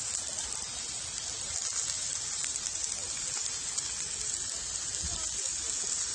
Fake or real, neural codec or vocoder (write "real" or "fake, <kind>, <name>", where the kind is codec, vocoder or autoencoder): real